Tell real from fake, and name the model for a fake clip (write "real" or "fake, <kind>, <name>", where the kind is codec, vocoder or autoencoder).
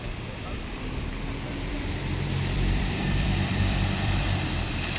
fake, vocoder, BigVGAN v2